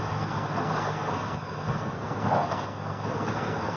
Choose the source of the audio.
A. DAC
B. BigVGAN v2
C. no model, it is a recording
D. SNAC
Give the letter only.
D